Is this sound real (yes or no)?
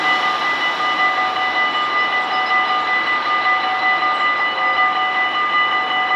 yes